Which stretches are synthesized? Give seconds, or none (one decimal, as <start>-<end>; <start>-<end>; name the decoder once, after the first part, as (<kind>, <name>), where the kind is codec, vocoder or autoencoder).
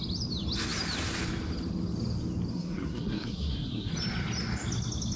2.5-3.9 (codec, SNAC)